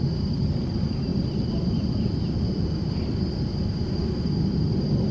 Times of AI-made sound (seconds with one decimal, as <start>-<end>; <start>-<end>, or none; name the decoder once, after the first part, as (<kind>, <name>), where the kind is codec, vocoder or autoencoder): none

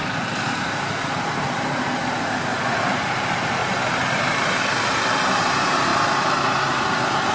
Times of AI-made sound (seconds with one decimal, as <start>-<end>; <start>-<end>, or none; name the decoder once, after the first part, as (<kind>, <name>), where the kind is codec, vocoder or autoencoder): 1.1-3.6 (vocoder, BigVGAN v2); 4.6-5.9; 6.7-7.3

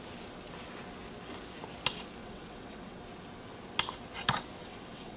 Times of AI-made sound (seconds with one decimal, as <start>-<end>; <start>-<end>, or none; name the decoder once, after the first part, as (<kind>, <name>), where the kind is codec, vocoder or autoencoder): 2.2-3.0 (vocoder, WaveNeXt); 4.6-5.2

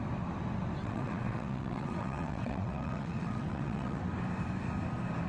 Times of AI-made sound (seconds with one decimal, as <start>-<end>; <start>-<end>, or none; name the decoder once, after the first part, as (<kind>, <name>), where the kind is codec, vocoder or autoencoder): 0.8-4.0 (vocoder, WaveNeXt)